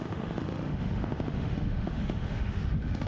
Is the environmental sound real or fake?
fake